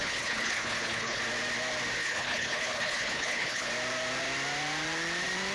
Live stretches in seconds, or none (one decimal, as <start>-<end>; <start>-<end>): 1.2-2.0; 3.7-5.5